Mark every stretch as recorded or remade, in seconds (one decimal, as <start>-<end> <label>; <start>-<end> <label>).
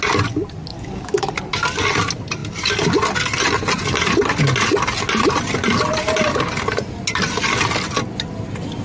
0.0-0.7 recorded; 0.7-1.3 remade; 1.3-8.8 recorded